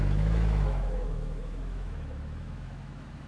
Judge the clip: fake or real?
fake